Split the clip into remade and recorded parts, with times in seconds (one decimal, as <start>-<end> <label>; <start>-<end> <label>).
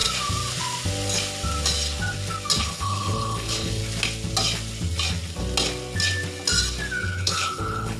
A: 0.0-2.6 recorded; 2.6-3.8 remade; 3.8-7.0 recorded; 7.0-8.0 remade